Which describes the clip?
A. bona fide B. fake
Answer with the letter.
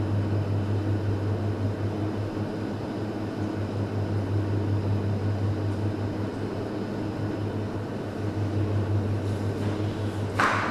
A